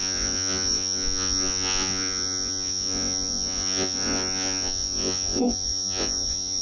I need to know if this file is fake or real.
fake